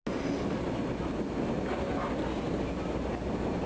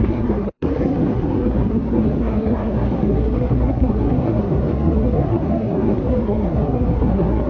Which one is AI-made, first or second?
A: second